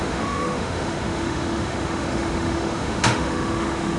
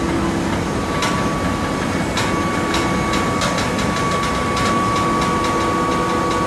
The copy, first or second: first